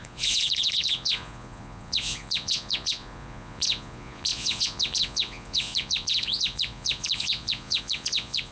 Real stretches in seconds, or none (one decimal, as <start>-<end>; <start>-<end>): none